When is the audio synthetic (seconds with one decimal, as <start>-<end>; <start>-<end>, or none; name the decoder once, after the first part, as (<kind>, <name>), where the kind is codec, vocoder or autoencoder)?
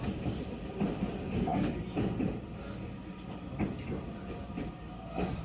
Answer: none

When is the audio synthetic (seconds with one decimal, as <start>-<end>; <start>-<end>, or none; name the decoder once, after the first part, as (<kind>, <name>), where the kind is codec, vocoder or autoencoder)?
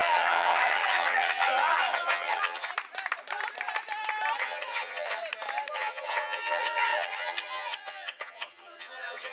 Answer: 0.0-2.7 (vocoder, HiFi-GAN); 4.4-5.2; 5.7-9.3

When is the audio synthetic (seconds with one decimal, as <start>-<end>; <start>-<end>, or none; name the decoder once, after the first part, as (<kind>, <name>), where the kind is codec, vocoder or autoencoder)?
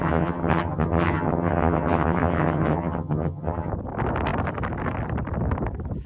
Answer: 0.0-3.7 (vocoder, HiFi-GAN)